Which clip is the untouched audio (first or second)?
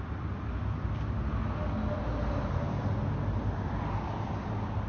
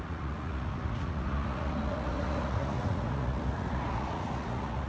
first